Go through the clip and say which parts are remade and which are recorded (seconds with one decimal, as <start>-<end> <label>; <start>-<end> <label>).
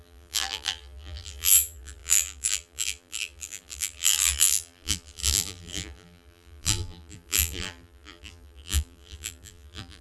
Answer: 0.0-10.0 remade